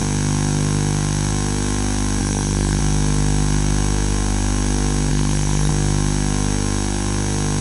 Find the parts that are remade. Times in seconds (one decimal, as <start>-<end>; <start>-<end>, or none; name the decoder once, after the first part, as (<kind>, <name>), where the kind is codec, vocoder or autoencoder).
2.2-2.8 (codec, SNAC); 5.1-5.7